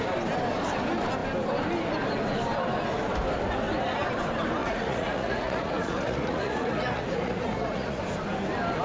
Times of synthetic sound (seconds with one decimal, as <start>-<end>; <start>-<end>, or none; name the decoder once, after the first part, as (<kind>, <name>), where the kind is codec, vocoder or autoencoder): 4.6-8.0 (vocoder, Vocos)